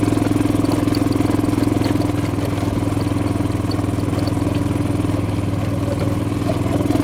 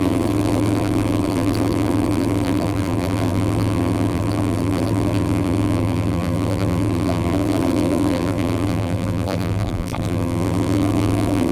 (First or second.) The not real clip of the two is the second